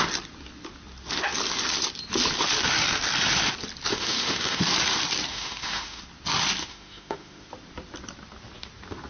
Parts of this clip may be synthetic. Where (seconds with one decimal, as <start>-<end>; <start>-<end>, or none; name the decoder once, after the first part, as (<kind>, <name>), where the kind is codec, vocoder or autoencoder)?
3.9-4.6 (autoencoder, DAC-VAE); 5.3-6.0; 6.6-7.5